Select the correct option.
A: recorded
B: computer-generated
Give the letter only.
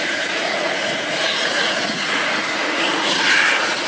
B